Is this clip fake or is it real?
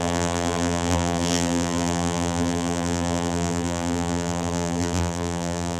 fake